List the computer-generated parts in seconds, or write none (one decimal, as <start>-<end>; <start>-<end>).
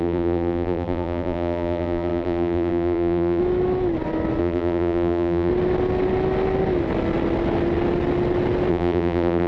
0.0-3.4; 4.4-5.5; 8.7-9.5